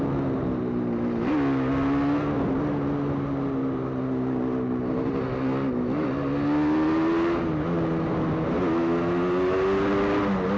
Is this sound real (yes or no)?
yes